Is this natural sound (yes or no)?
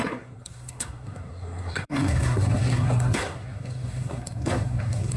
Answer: no